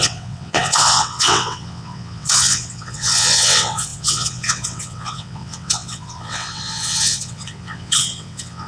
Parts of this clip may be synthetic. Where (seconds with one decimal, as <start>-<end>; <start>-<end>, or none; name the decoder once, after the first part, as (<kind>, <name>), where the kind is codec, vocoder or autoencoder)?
0.0-8.7 (vocoder, WaveNeXt)